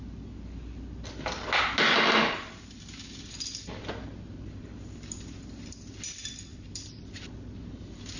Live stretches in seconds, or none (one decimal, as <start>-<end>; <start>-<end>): 0.0-6.5; 7.3-8.2